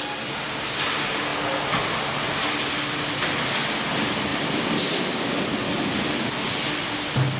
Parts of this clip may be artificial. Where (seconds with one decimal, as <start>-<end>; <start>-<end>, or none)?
4.3-5.4